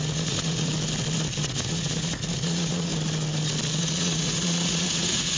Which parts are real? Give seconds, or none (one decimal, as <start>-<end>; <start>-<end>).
0.7-1.4; 2.9-3.8